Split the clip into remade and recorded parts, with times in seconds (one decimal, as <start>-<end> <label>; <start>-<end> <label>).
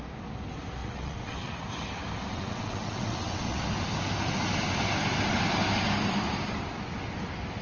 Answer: 0.0-0.8 recorded; 0.8-1.5 remade; 1.5-2.3 recorded; 2.3-3.6 remade; 3.6-7.6 recorded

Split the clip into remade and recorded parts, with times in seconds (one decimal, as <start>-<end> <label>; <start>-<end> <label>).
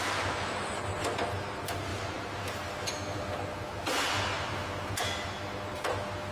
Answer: 0.0-6.3 recorded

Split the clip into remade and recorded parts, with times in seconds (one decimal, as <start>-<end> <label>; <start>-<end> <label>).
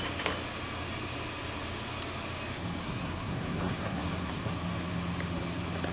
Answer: 0.0-2.8 recorded; 2.8-4.5 remade; 4.5-5.9 recorded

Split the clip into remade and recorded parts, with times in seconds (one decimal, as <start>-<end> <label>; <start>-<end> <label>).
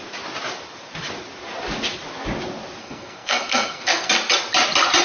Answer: 0.0-2.8 recorded; 2.8-4.1 remade; 4.1-5.0 recorded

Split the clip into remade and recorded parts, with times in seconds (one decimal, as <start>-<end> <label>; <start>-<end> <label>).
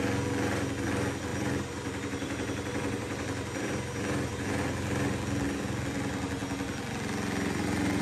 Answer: 0.0-1.3 recorded; 1.3-4.6 remade; 4.6-8.0 recorded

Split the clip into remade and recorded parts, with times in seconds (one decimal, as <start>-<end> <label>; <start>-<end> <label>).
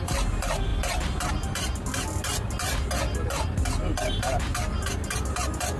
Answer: 0.0-5.8 recorded